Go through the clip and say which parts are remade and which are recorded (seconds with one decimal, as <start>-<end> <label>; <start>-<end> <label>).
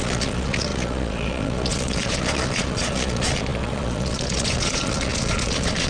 0.0-5.9 remade